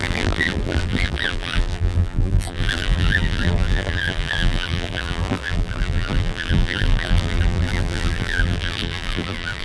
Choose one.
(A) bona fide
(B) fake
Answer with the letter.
B